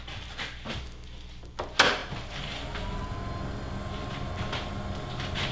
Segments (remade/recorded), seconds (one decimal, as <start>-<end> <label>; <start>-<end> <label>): 0.0-5.5 recorded